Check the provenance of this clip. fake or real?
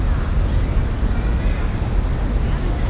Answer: real